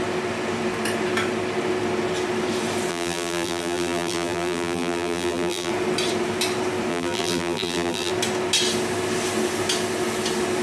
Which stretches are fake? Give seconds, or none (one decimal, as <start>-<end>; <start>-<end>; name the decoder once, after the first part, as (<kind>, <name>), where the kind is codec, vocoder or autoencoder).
2.9-5.7 (vocoder, BigVGAN v2); 6.9-8.1